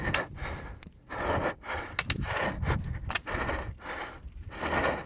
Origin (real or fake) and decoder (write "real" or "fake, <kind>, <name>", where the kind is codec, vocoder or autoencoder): real